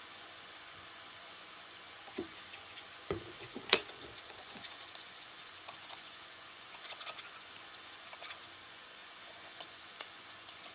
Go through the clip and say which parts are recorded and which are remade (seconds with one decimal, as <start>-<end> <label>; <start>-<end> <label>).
0.0-10.7 remade